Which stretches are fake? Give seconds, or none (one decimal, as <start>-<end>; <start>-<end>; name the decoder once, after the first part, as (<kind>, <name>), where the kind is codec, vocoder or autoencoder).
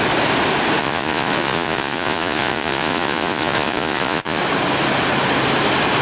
0.8-4.4 (vocoder, Vocos)